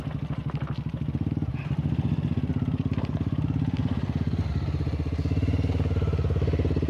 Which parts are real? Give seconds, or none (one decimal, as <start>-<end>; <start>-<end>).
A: 0.0-2.5; 4.2-6.9